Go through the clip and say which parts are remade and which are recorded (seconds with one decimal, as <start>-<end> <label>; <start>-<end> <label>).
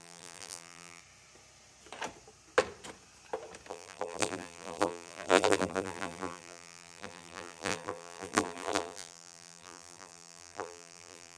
0.0-1.0 remade; 1.0-3.7 recorded; 3.7-11.4 remade